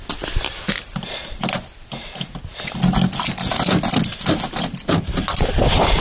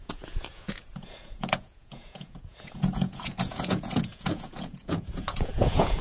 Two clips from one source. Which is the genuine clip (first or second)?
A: first